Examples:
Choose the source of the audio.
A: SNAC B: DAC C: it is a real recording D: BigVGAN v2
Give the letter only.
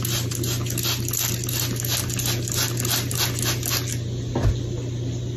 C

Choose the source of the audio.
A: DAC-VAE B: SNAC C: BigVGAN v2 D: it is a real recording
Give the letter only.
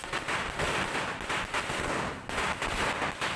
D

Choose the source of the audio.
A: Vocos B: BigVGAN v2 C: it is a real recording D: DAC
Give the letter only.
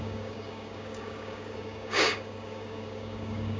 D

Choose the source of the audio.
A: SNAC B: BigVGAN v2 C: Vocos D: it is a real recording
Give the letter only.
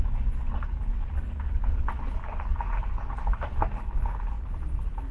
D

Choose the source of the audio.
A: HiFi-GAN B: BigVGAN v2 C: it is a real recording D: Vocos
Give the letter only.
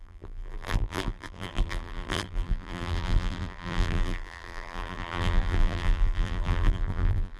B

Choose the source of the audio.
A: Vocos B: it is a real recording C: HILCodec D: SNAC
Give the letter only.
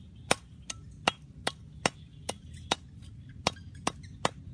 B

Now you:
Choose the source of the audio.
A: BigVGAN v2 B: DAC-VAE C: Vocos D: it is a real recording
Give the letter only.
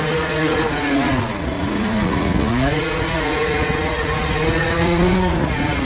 C